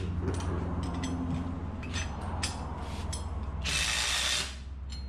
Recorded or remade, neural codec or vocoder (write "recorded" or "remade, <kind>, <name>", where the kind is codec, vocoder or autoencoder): recorded